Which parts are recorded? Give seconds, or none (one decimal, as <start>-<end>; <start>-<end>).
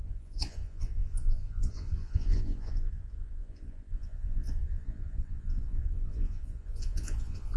none